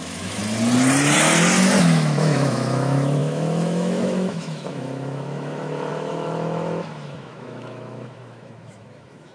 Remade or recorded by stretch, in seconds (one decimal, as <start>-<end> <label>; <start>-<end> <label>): 0.0-0.4 remade; 0.4-1.8 recorded; 1.8-9.3 remade